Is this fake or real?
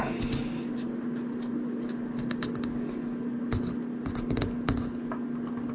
real